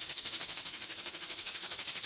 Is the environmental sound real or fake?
fake